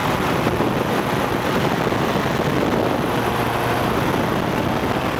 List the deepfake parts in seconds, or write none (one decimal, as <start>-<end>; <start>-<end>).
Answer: none